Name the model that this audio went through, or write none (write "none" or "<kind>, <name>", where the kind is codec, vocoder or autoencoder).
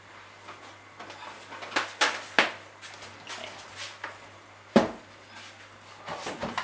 none